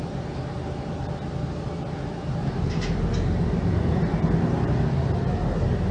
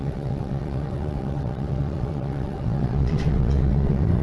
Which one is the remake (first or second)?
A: second